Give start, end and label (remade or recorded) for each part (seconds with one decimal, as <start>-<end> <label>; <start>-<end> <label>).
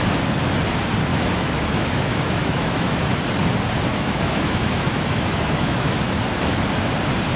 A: 0.0-1.1 recorded; 1.1-3.2 remade; 3.2-3.9 recorded; 3.9-6.2 remade; 6.2-7.4 recorded